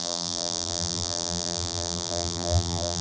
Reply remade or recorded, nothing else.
remade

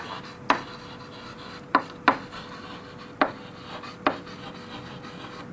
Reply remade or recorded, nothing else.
recorded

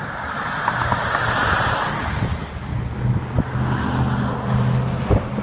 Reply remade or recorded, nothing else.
recorded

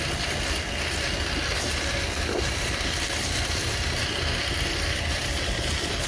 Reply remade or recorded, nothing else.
recorded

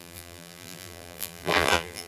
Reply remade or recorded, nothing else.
remade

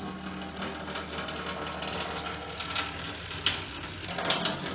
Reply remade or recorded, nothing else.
recorded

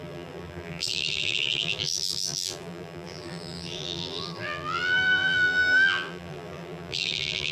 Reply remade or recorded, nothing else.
remade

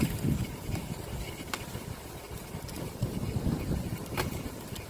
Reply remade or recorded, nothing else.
remade